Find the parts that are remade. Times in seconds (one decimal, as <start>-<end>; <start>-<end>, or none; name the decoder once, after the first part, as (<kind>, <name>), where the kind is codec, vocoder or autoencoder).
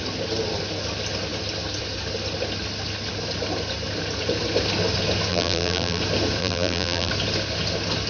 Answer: 5.3-6.0 (vocoder, BigVGAN v2); 6.4-7.1